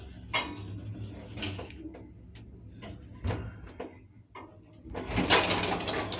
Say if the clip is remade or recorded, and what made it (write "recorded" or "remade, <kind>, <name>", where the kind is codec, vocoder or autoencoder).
recorded